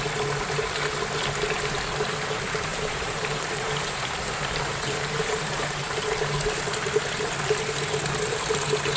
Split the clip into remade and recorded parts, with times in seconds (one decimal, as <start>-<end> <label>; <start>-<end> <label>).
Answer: 0.0-2.7 recorded; 2.7-6.0 remade; 6.0-9.0 recorded